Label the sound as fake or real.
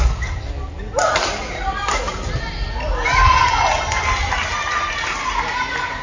real